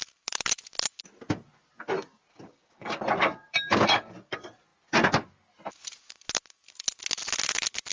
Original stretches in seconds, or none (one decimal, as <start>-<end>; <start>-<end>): 0.0-2.3; 3.0-7.9